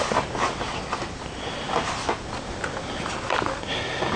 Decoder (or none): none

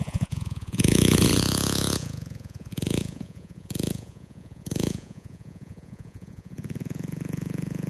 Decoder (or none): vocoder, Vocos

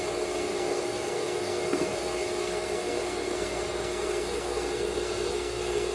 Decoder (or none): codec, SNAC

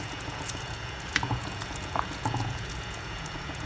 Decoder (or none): vocoder, Vocos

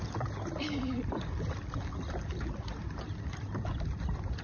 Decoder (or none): none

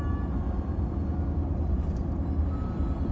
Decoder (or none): none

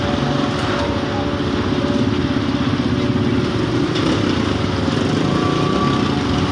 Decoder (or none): none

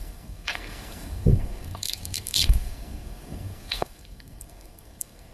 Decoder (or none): codec, SNAC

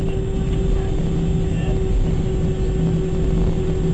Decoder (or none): none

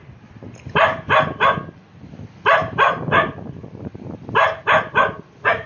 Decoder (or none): none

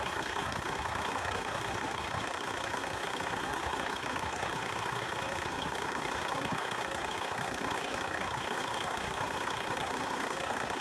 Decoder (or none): codec, SNAC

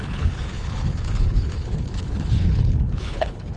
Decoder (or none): codec, HILCodec